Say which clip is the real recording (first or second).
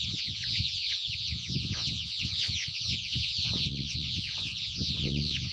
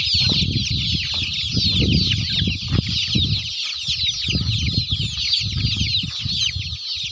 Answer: second